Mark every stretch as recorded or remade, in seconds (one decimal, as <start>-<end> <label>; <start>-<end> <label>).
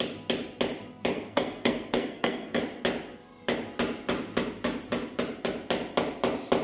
0.0-1.1 recorded; 1.1-2.6 remade; 2.6-6.6 recorded